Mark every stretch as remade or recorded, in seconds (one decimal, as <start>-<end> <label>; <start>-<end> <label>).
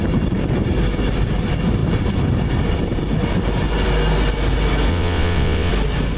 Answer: 0.0-4.9 recorded; 4.9-5.7 remade; 5.7-6.2 recorded